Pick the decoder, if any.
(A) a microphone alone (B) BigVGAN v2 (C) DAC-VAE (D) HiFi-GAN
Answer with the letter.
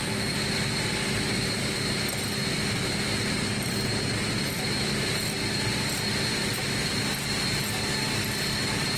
A